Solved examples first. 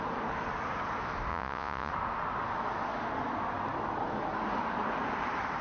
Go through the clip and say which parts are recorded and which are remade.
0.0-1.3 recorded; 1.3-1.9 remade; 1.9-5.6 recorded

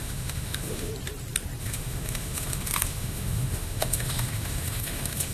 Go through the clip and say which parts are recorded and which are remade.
0.0-0.9 remade; 0.9-1.6 recorded; 1.6-5.3 remade

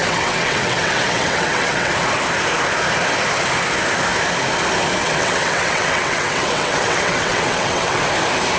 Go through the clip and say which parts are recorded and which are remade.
0.0-1.9 remade; 1.9-5.0 recorded; 5.0-8.0 remade; 8.0-8.6 recorded

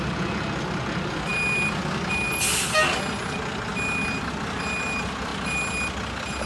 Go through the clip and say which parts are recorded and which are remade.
0.0-6.5 recorded

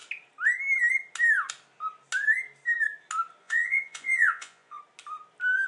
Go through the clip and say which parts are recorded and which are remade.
0.0-3.4 recorded; 3.4-4.8 remade; 4.8-5.7 recorded

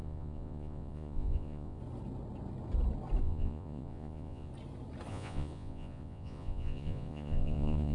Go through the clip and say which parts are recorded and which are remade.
0.0-1.8 remade; 1.8-3.2 recorded; 3.2-4.5 remade; 4.5-5.1 recorded; 5.1-7.9 remade

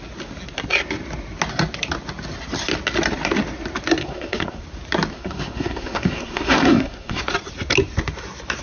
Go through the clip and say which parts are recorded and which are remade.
0.0-4.0 recorded; 4.0-4.6 remade; 4.6-5.1 recorded; 5.1-7.2 remade; 7.2-8.6 recorded

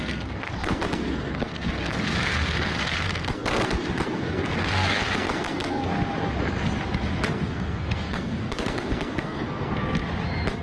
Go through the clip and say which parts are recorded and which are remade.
0.0-5.9 remade; 5.9-7.3 recorded; 7.3-10.0 remade; 10.0-10.6 recorded